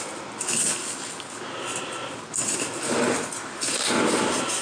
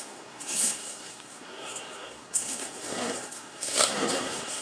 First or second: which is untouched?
first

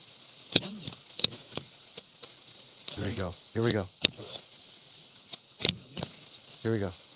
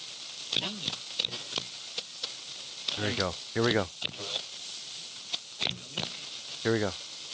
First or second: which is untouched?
second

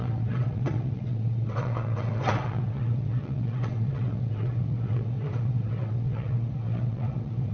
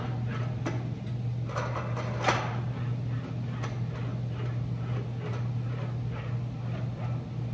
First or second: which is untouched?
second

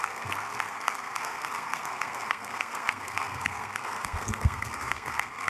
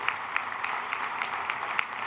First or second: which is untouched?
second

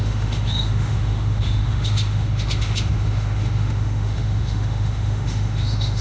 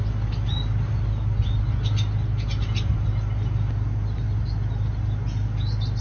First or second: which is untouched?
second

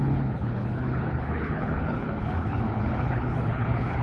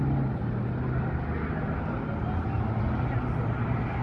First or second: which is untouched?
second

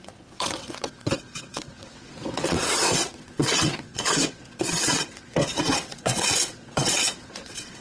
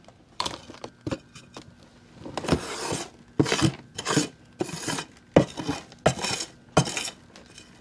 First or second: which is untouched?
second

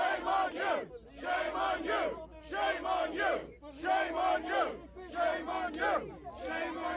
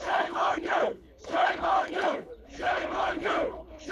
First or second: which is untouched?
first